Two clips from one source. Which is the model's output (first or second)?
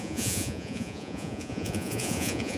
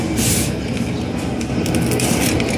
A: first